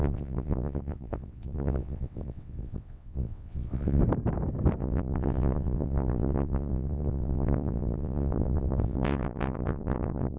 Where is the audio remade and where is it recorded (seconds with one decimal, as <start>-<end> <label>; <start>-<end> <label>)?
0.0-4.0 remade; 4.0-4.8 recorded; 4.8-10.4 remade